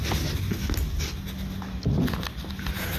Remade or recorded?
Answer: recorded